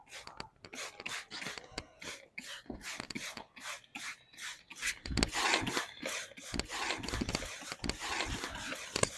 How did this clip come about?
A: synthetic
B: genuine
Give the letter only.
B